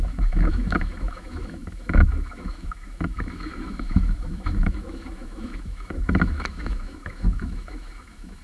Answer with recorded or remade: remade